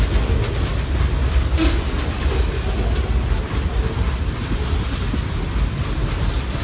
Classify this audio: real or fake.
real